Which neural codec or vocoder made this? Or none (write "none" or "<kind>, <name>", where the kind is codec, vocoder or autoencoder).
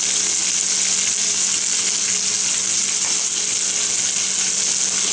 none